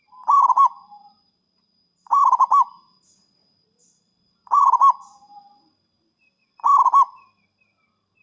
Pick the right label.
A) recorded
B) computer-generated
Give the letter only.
B